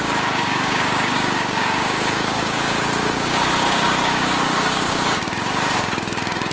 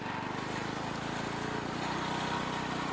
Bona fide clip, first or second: second